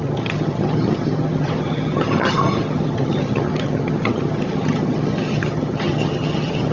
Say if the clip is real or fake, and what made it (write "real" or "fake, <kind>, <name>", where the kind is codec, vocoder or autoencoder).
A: fake, vocoder, HiFi-GAN